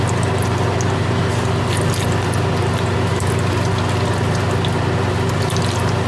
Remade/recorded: recorded